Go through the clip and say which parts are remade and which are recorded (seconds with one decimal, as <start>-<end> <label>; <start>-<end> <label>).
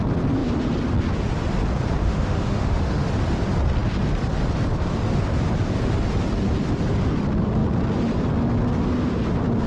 0.0-2.0 recorded; 2.0-3.1 remade; 3.1-9.7 recorded